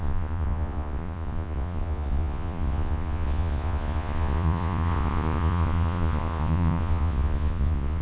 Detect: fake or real fake